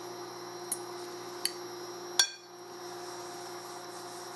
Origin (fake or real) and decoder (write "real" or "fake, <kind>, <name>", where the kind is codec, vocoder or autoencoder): real